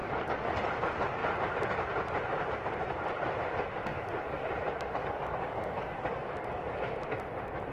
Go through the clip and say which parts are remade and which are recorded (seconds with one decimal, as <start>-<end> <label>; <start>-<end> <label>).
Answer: 0.0-0.5 remade; 0.5-3.9 recorded; 3.9-4.5 remade; 4.5-5.0 recorded; 5.0-6.8 remade; 6.8-7.7 recorded